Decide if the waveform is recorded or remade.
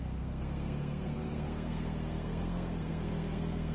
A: remade